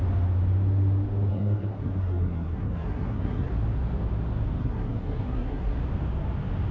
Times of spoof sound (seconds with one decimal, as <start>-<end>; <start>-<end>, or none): 1.3-3.5; 4.6-5.8